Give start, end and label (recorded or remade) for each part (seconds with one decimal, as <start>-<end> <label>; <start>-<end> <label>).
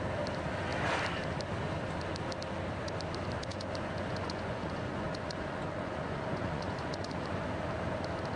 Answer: 0.0-3.5 recorded; 3.5-7.4 remade; 7.4-8.4 recorded